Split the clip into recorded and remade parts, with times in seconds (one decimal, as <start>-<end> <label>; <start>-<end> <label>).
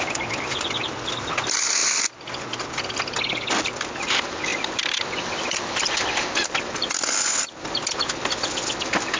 0.0-4.5 recorded; 4.5-5.9 remade; 5.9-9.2 recorded